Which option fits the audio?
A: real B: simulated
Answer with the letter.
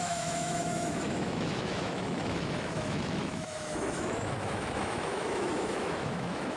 B